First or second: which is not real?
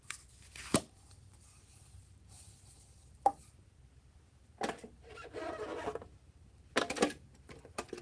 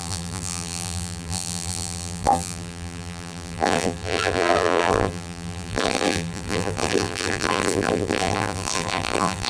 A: second